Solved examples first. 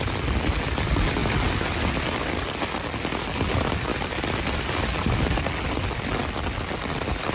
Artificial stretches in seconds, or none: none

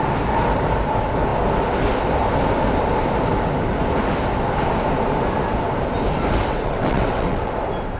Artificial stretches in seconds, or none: 6.5-7.5 (vocoder, WaveNeXt)

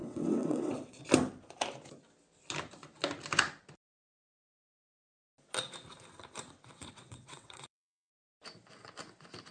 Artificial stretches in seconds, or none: 0.0-1.0 (vocoder, WaveNeXt); 6.7-8.1

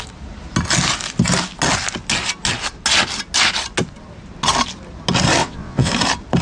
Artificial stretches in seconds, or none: 5.4-5.9 (vocoder, WaveNeXt)

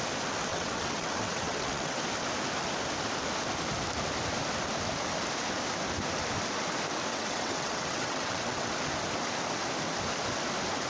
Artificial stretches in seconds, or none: 0.5-2.0 (vocoder, WaveNeXt); 7.1-8.7

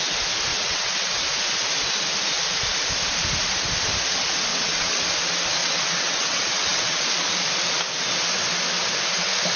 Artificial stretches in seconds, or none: 0.5-1.2 (vocoder, WaveNeXt); 4.5-5.0; 5.6-7.0

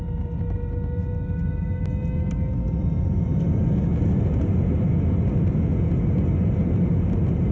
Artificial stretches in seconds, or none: none

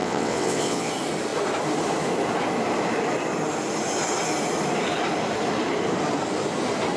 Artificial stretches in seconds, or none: 0.0-0.9 (vocoder, WaveNeXt)